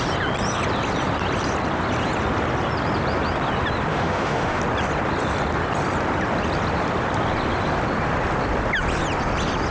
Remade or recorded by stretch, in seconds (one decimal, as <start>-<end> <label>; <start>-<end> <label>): 0.0-3.9 recorded; 3.9-4.6 remade; 4.6-9.7 recorded